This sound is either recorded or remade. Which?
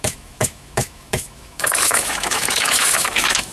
remade